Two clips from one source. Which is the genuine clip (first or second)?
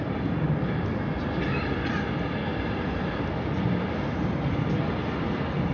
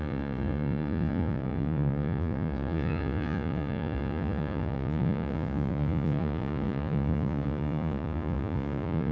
first